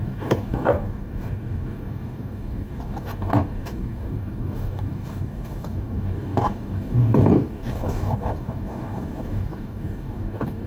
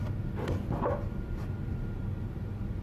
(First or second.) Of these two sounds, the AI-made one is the first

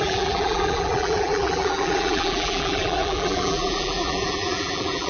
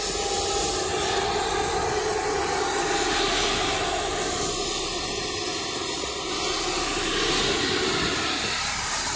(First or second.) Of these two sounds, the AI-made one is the first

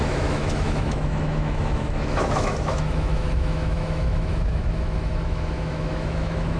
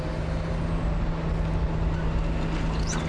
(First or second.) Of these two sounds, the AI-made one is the first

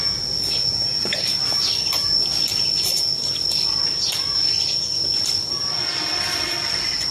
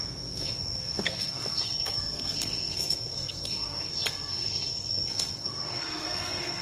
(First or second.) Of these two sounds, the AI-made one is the second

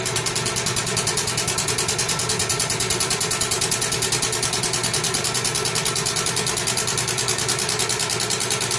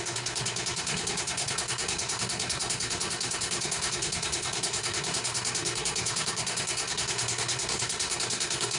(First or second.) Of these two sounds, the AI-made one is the second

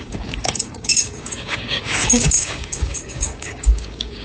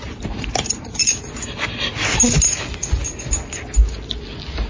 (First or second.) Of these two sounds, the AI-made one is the first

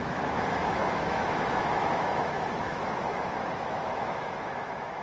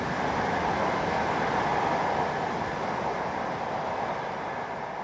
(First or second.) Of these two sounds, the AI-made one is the first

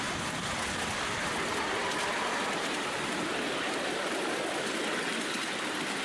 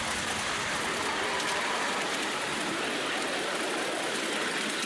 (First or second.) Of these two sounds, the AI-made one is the first